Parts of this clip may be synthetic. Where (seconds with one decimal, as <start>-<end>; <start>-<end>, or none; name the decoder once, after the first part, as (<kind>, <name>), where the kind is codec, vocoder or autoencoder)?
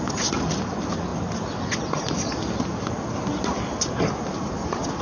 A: none